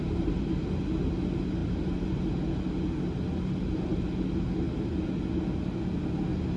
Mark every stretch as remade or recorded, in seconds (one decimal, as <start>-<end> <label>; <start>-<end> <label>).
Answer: 0.0-0.8 remade; 0.8-1.6 recorded; 1.6-2.2 remade; 2.2-6.6 recorded